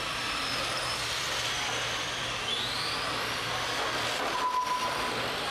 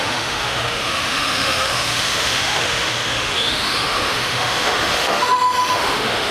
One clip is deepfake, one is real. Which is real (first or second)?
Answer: first